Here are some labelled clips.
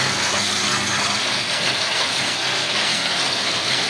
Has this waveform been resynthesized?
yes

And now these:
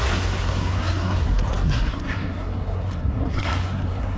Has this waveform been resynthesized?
yes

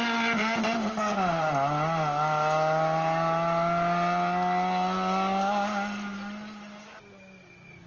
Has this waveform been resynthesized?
no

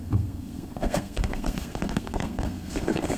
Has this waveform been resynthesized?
yes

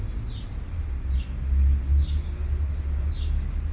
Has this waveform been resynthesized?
no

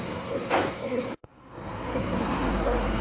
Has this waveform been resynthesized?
yes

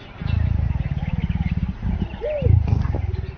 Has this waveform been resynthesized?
no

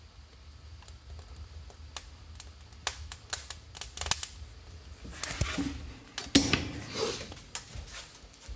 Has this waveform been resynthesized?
no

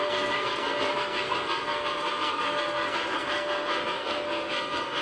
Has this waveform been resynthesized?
yes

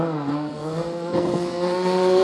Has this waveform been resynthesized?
yes